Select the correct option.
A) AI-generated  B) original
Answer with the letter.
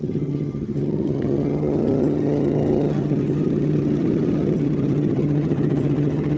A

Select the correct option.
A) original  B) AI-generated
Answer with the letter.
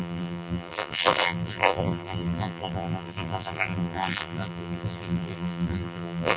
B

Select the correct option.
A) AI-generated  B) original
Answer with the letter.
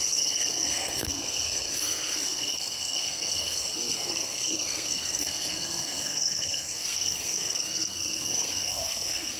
A